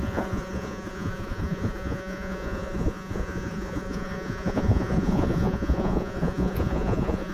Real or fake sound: fake